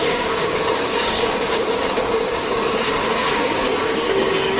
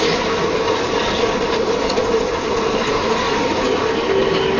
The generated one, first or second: first